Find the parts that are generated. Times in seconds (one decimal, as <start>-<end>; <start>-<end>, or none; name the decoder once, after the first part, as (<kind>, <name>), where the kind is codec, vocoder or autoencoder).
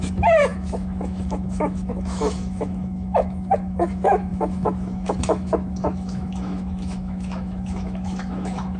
0.0-8.8 (autoencoder, DAC-VAE)